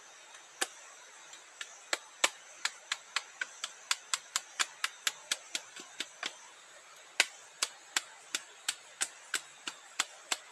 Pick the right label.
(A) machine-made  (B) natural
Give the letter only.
B